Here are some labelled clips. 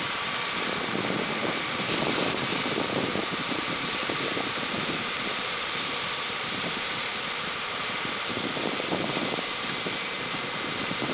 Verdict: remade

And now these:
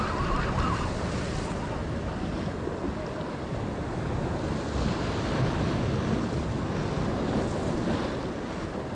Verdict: recorded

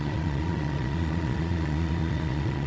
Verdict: remade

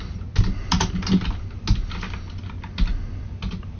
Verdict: recorded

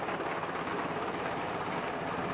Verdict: recorded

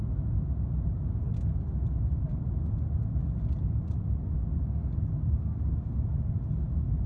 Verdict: recorded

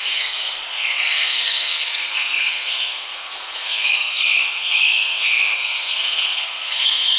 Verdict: remade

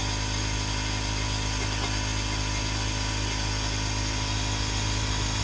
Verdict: recorded